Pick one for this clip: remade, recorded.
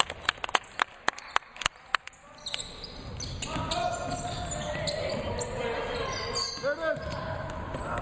recorded